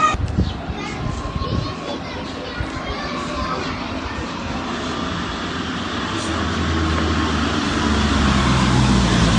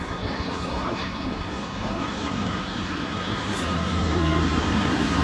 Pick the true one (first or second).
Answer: first